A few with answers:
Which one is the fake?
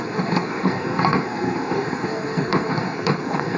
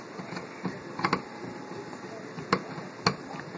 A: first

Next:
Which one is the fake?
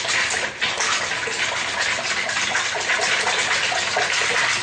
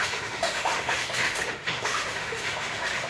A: second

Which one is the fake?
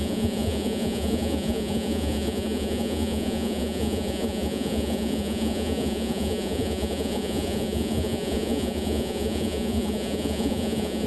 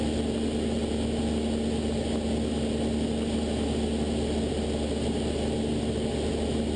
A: first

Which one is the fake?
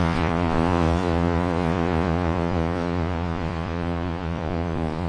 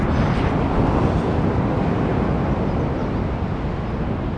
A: first